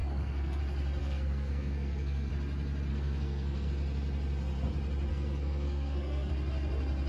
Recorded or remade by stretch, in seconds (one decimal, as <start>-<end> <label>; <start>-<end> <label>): 0.0-0.6 remade; 0.6-1.0 recorded; 1.0-2.3 remade; 2.3-2.9 recorded; 2.9-3.7 remade; 3.7-5.1 recorded; 5.1-6.3 remade; 6.3-7.1 recorded

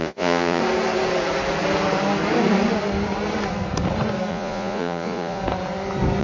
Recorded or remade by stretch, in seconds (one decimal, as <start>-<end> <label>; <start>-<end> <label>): 0.0-0.6 remade; 0.6-4.3 recorded; 4.3-5.4 remade; 5.4-6.2 recorded

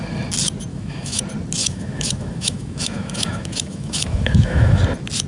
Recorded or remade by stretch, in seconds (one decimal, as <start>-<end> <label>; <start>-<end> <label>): 0.0-0.7 recorded; 0.7-1.2 remade; 1.2-1.6 recorded; 1.6-4.8 remade; 4.8-5.3 recorded

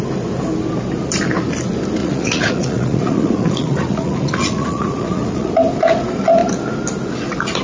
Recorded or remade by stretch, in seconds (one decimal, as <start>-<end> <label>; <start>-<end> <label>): 0.0-2.0 recorded; 2.0-5.5 remade; 5.5-7.6 recorded

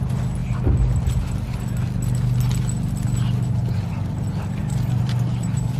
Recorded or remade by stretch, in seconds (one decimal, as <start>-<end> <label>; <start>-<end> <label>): 0.0-4.6 recorded; 4.6-5.8 remade

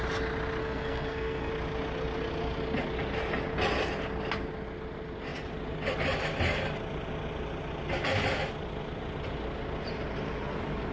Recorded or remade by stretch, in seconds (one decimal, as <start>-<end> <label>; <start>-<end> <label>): 0.0-0.6 recorded; 0.6-1.5 remade; 1.5-10.9 recorded